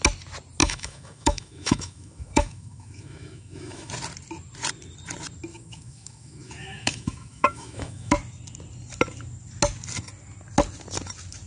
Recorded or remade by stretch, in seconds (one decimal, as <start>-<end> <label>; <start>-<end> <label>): 0.0-0.6 recorded; 0.6-3.9 remade; 3.9-5.5 recorded; 5.5-8.1 remade; 8.1-11.5 recorded